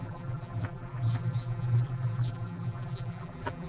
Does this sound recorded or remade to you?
remade